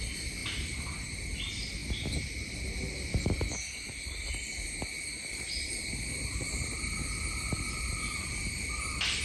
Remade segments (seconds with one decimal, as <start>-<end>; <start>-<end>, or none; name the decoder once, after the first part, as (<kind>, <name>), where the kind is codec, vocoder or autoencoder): none